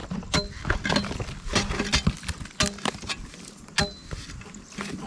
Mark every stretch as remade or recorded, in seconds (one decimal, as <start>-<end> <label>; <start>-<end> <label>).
0.0-5.1 recorded